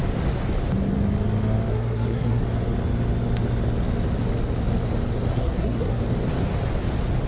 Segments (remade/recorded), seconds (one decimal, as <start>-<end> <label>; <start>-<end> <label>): 0.0-1.7 recorded; 1.7-2.4 remade; 2.4-5.3 recorded; 5.3-6.0 remade; 6.0-7.3 recorded